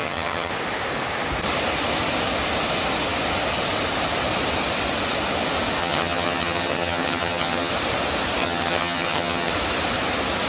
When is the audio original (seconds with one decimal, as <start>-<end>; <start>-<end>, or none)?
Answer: 0.5-5.8; 7.7-8.4; 9.5-10.5